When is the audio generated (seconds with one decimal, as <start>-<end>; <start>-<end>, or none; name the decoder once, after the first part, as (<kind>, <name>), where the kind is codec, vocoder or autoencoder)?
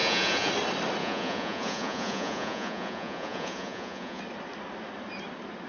0.0-0.5 (vocoder, Vocos); 1.0-4.2